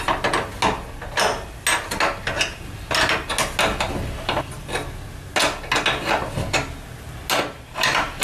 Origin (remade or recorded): recorded